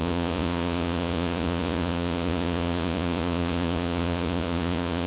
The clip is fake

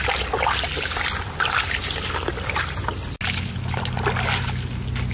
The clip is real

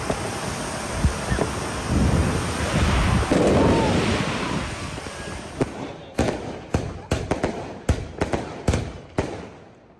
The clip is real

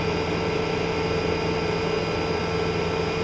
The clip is real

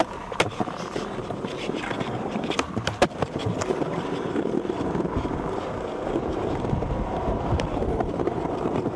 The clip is fake